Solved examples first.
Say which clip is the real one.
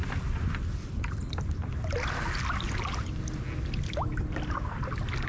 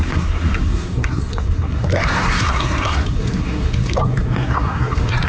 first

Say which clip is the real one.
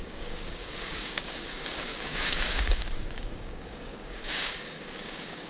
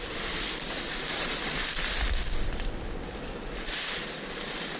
second